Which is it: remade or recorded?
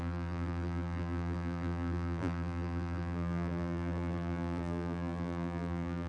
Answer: remade